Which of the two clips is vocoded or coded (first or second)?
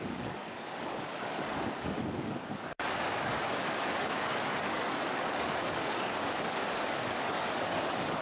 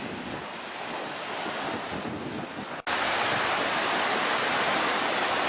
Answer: first